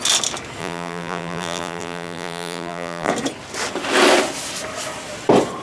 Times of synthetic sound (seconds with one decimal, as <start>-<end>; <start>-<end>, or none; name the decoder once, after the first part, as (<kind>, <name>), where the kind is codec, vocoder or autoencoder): 0.6-3.1 (vocoder, BigVGAN v2)